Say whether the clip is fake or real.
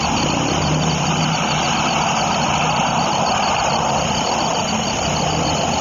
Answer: real